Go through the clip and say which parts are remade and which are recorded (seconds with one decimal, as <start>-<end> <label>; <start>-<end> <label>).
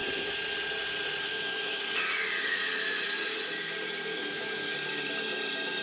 0.0-1.3 recorded; 1.3-1.8 remade; 1.8-4.2 recorded; 4.2-4.7 remade; 4.7-5.8 recorded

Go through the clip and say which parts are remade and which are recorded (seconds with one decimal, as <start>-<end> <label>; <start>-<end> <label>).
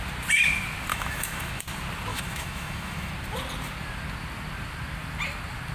0.0-0.9 recorded; 0.9-1.6 remade; 1.6-2.1 recorded; 2.1-3.1 remade; 3.1-5.7 recorded